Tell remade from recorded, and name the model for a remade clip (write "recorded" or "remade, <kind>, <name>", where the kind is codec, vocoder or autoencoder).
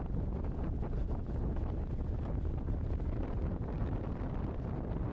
recorded